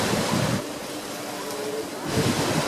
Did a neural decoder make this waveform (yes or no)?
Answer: no